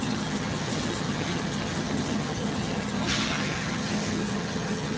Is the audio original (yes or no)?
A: no